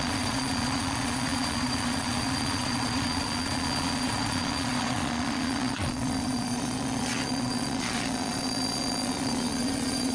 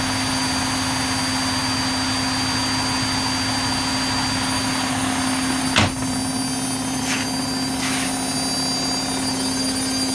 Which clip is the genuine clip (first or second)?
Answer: second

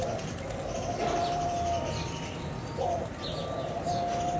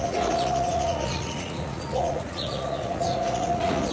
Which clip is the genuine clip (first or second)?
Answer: first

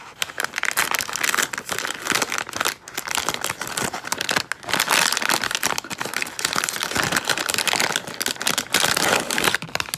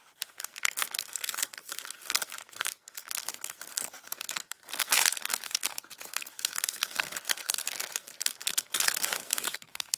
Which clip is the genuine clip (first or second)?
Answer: first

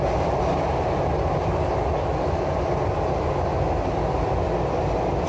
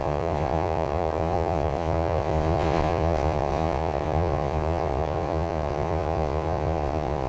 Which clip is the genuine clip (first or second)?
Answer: first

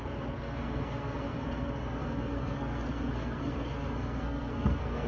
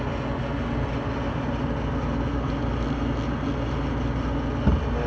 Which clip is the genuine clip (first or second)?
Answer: second